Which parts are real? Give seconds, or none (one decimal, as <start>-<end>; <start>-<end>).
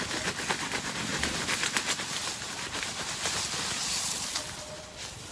0.0-5.3